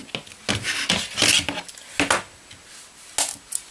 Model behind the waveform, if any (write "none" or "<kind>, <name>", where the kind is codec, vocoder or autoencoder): none